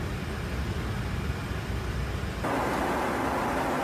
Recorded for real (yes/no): yes